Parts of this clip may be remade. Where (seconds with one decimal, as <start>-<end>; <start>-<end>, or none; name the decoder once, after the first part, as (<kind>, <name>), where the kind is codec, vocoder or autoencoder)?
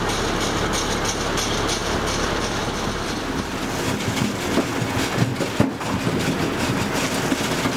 1.8-3.3 (vocoder, BigVGAN v2)